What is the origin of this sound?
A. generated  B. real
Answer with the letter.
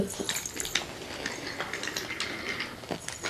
B